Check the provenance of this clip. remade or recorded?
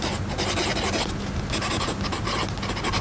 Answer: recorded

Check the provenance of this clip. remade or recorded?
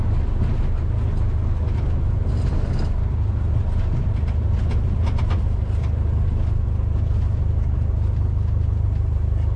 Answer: recorded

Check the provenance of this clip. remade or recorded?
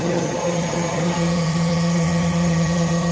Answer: remade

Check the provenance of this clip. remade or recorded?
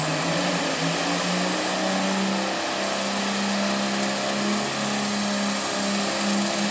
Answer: recorded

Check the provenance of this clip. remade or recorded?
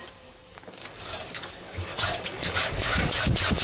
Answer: remade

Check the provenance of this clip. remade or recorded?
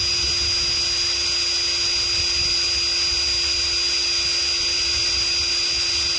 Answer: recorded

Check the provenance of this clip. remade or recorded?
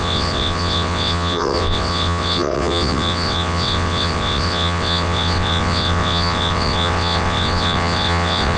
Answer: remade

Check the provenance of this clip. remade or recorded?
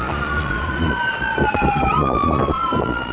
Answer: remade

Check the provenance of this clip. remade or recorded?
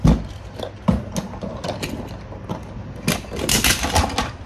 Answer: recorded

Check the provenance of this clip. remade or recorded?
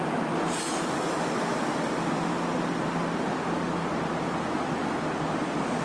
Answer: recorded